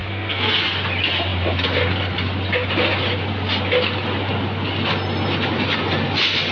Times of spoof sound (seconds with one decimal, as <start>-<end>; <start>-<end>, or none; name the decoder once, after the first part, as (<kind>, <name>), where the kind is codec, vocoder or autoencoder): 0.0-0.6 (codec, SNAC)